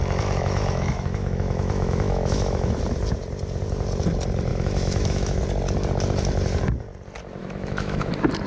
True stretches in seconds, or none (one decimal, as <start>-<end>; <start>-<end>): 2.8-4.5; 5.4-7.4; 8.1-8.5